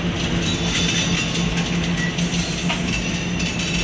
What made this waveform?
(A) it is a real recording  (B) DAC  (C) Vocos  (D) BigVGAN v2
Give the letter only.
A